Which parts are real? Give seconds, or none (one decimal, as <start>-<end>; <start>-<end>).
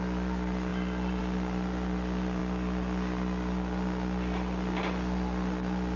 0.0-6.0